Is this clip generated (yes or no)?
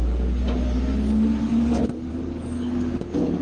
yes